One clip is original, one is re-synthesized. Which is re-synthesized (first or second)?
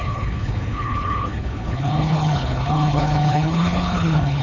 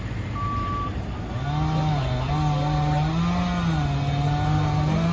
first